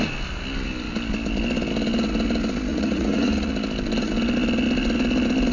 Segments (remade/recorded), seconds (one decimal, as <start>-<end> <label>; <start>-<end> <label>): 0.0-2.7 recorded; 2.7-3.5 remade; 3.5-5.5 recorded